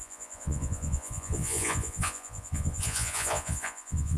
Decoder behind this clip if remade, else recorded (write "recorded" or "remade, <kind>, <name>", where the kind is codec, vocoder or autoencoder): remade, vocoder, Vocos